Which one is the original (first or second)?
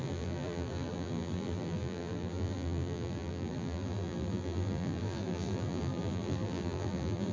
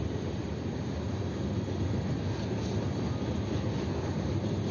second